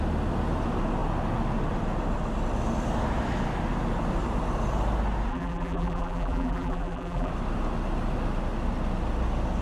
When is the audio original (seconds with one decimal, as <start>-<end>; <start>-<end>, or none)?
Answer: 0.0-5.3; 7.3-9.6